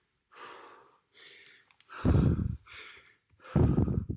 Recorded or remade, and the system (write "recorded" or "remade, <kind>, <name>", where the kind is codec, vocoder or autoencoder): recorded